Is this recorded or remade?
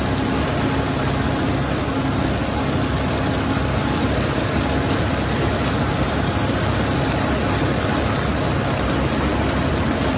recorded